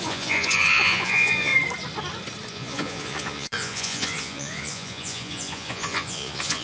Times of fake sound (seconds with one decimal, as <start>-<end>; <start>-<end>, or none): 0.0-1.5; 2.5-6.6

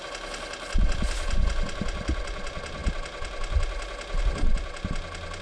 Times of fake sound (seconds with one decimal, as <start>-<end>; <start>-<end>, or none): none

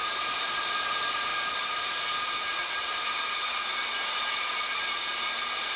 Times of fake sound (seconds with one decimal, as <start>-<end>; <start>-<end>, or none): none

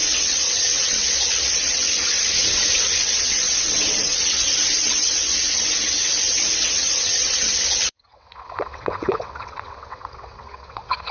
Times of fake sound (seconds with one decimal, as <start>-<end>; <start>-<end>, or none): 0.0-11.1

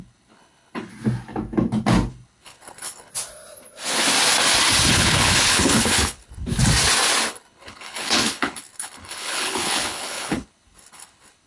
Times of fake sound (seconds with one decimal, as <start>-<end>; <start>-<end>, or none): 0.0-0.9; 2.1-3.1; 4.9-6.5; 7.3-11.5